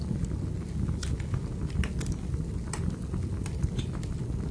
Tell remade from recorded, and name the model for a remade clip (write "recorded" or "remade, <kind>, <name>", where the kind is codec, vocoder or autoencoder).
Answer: recorded